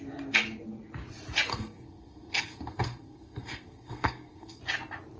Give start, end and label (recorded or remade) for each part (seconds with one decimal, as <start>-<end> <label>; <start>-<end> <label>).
0.0-1.5 recorded; 1.5-4.6 remade; 4.6-5.2 recorded